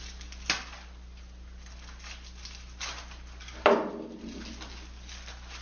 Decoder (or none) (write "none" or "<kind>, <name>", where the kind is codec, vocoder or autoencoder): none